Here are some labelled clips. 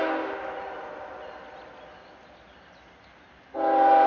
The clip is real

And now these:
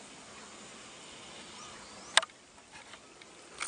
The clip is real